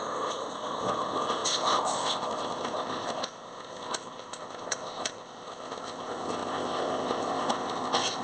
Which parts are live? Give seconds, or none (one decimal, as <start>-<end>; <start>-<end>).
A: none